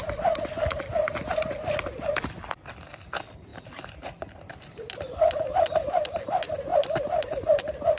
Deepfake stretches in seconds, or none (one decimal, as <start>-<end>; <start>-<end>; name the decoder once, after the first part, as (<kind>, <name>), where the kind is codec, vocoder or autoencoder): none